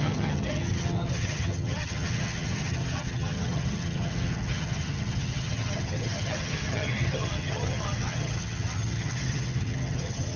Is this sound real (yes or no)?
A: no